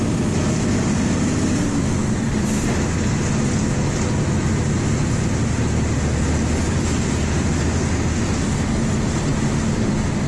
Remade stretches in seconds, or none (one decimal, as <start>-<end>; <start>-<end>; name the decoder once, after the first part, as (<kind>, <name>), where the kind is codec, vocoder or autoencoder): none

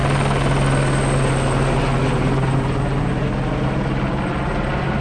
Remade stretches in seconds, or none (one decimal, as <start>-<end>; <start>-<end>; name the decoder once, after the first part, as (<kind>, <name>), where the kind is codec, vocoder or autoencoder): none